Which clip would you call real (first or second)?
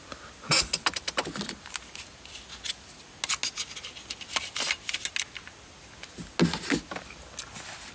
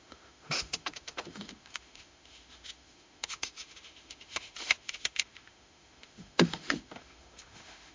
first